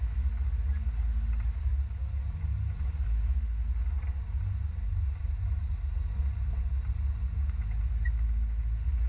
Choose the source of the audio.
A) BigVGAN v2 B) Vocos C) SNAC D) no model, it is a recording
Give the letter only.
D